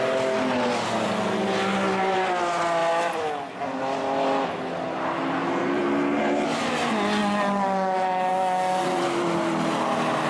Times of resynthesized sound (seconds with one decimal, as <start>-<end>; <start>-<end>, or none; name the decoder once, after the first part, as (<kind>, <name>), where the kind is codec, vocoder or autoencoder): 5.2-5.8 (vocoder, BigVGAN v2)